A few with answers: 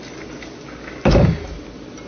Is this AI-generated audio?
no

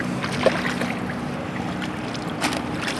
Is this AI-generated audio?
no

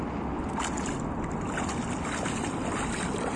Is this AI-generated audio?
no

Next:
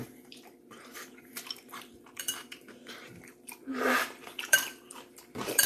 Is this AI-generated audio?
yes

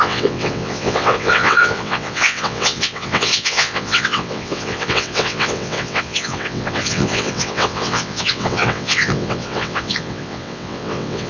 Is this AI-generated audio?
yes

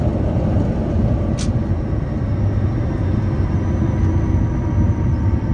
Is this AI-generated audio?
no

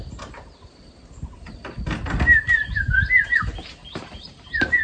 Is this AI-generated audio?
no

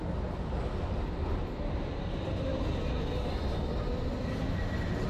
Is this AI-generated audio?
no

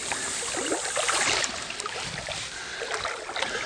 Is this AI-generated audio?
no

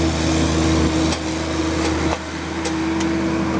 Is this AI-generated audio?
no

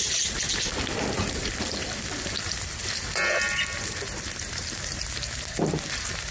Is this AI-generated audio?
no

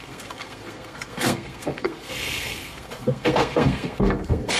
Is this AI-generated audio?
yes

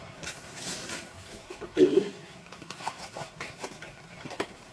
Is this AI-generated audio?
yes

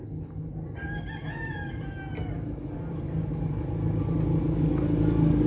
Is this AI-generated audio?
no